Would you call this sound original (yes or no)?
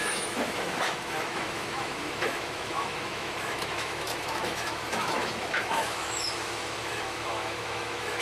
no